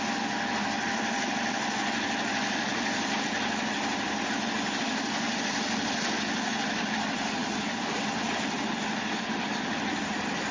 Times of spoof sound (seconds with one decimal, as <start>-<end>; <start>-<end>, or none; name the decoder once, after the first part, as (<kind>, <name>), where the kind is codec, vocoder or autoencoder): none